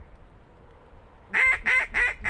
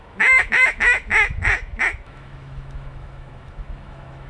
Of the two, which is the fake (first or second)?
second